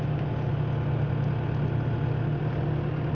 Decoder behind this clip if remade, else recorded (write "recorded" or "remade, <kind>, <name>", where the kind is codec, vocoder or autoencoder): recorded